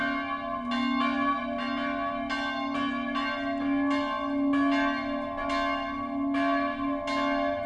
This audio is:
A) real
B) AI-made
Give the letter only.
A